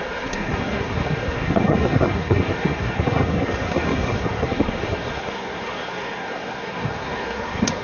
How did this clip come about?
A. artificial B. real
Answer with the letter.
A